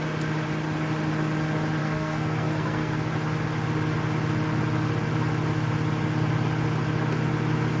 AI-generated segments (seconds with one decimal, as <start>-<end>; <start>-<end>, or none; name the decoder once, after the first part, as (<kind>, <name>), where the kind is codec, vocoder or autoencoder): 1.8-3.1 (codec, SNAC)